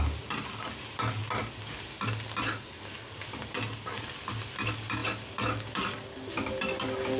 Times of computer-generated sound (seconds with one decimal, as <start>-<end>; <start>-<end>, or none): none